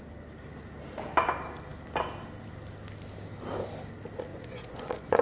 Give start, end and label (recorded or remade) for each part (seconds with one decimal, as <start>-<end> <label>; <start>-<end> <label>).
0.0-4.3 recorded; 4.3-5.2 remade